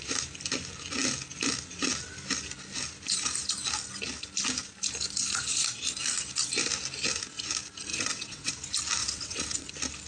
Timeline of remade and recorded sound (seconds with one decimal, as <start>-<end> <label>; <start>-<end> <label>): 0.0-7.9 recorded; 7.9-8.5 remade; 8.5-9.0 recorded; 9.0-9.7 remade; 9.7-10.1 recorded